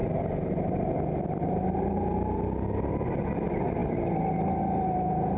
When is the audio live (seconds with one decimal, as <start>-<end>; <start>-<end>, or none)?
0.0-5.4